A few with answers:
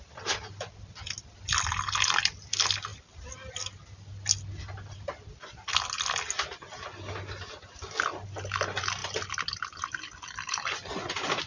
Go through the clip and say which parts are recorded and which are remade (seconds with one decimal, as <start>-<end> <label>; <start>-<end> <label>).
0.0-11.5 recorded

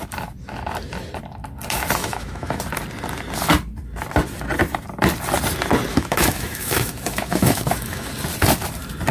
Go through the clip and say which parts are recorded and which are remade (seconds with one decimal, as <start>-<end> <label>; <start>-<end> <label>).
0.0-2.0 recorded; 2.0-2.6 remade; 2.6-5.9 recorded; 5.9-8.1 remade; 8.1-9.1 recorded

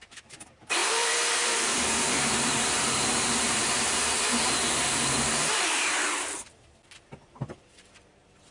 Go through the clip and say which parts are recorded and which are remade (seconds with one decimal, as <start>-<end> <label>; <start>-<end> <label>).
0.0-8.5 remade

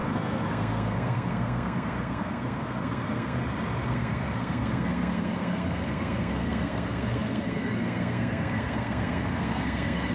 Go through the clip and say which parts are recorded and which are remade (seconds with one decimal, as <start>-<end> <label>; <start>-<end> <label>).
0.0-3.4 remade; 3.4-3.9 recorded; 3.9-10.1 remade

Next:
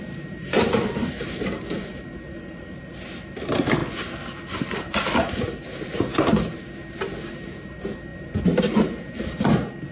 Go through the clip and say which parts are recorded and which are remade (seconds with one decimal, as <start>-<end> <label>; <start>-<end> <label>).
0.0-3.8 remade; 3.8-7.3 recorded; 7.3-9.9 remade

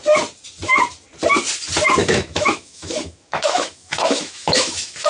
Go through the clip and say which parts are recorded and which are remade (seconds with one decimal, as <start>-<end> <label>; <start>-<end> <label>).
0.0-2.0 recorded; 2.0-5.1 remade

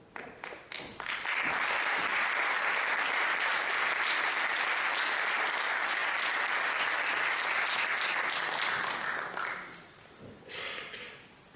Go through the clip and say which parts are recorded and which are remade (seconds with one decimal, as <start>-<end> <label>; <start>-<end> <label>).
0.0-11.6 recorded